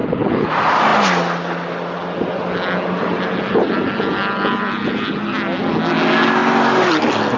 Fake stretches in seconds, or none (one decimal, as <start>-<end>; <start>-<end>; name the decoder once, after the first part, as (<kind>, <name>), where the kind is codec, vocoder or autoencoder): 0.0-0.5 (codec, HILCodec)